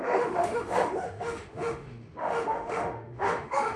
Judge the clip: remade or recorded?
remade